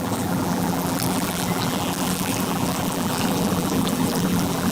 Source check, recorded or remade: remade